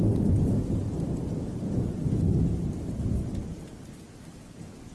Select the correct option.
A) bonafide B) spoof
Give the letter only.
A